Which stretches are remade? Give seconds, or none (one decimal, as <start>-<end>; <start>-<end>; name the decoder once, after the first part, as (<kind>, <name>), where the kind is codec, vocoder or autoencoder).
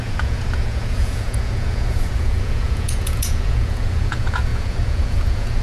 0.0-5.6 (vocoder, Vocos)